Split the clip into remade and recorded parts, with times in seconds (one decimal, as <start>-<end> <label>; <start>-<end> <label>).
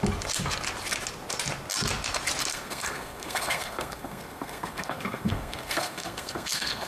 0.0-2.5 recorded; 2.5-6.9 remade